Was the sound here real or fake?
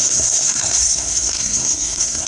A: fake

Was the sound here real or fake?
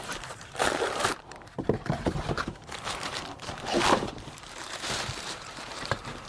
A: fake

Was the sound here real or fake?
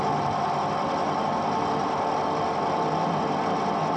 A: real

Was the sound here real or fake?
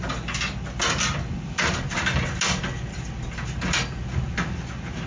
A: real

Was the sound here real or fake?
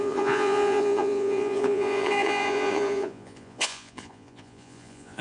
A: fake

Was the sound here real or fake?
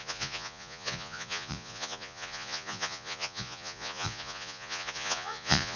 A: fake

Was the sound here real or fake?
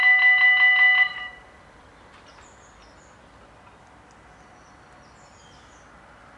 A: real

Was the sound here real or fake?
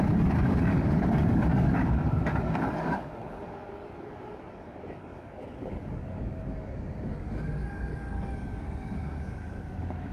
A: fake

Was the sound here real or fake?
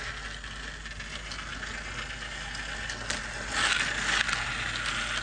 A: real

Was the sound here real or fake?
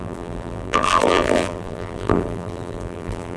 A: fake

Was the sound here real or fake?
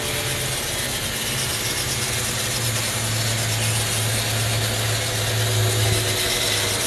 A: real